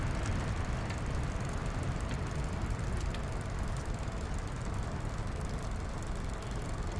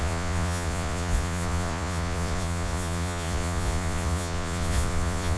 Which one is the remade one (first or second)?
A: second